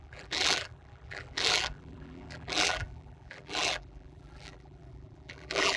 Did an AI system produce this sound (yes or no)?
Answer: yes